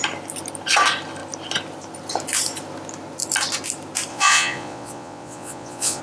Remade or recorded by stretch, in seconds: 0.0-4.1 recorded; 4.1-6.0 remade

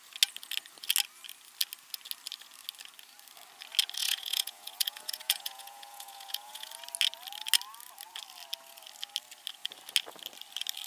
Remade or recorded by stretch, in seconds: 0.0-4.0 recorded; 4.0-6.7 remade; 6.7-10.9 recorded

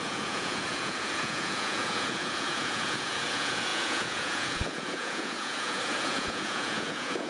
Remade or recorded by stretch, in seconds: 0.0-7.3 remade